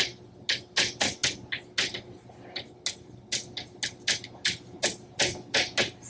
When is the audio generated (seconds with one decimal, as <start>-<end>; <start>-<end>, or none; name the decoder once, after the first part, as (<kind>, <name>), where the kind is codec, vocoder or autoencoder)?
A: none

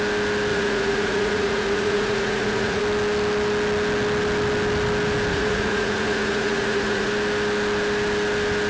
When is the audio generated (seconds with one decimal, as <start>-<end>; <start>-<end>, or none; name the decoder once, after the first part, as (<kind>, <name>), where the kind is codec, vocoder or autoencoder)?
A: 0.5-2.8 (vocoder, Vocos); 5.3-7.1